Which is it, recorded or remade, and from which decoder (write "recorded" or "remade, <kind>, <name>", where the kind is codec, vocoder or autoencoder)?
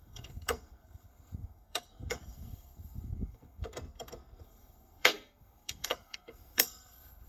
remade, codec, SNAC